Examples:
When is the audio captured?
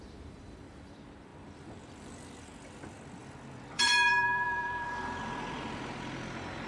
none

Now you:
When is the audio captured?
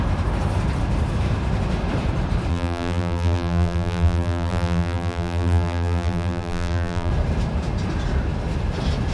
0.0-2.5; 7.1-9.1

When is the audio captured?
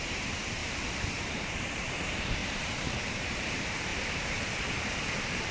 0.6-1.3; 3.9-4.7